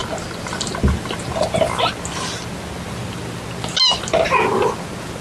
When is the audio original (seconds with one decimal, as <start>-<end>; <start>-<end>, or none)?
0.0-5.2